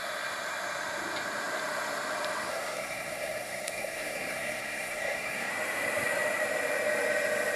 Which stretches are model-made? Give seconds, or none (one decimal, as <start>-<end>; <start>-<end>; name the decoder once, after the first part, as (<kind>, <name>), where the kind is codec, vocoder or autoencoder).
2.5-5.5 (codec, SNAC)